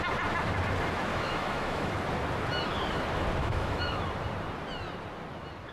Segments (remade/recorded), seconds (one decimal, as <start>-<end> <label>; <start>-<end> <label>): 0.0-1.1 recorded; 1.1-1.9 remade; 1.9-3.4 recorded; 3.4-4.0 remade; 4.0-5.7 recorded

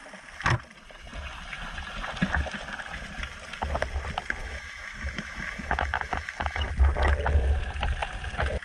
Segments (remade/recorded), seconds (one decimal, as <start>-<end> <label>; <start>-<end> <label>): 0.0-4.4 recorded; 4.4-6.7 remade; 6.7-8.6 recorded

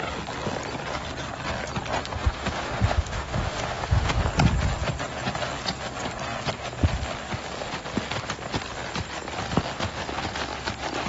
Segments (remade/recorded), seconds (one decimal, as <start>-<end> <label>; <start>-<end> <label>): 0.0-2.1 recorded; 2.1-4.2 remade; 4.2-11.1 recorded

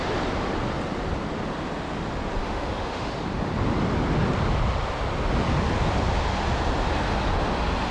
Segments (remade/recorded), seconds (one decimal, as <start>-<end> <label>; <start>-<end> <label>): 0.0-2.4 recorded; 2.4-3.1 remade; 3.1-7.9 recorded

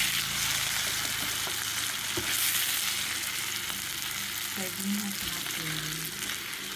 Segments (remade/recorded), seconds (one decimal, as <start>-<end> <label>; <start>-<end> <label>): 0.0-6.8 recorded